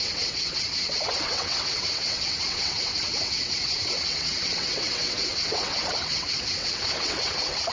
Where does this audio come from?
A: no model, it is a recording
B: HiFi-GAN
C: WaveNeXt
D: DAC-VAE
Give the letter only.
C